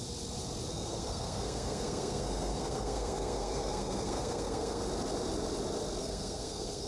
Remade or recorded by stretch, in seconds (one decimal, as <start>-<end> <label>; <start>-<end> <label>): 0.0-0.7 recorded; 0.7-4.8 remade; 4.8-6.0 recorded; 6.0-6.9 remade